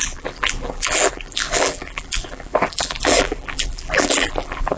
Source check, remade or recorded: remade